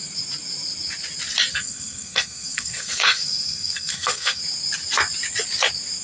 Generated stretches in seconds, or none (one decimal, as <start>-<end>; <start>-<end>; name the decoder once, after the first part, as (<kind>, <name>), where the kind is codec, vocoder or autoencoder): 1.5-4.4 (codec, SNAC)